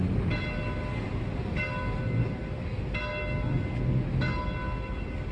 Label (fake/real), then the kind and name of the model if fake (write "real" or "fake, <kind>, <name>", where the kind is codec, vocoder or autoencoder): real